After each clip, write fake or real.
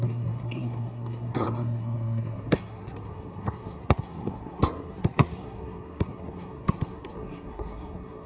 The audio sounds fake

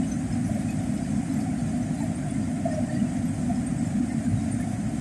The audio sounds real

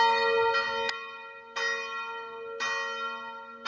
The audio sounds real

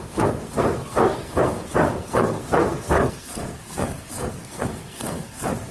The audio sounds fake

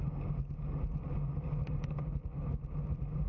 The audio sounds real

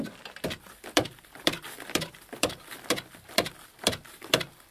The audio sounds fake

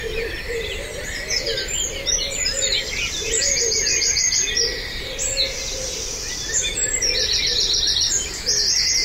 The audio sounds real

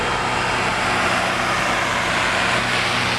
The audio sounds real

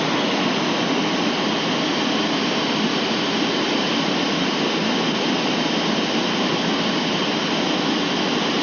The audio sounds real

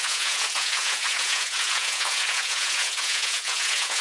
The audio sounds fake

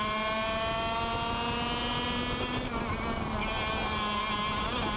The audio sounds real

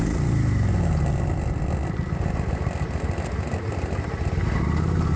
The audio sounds real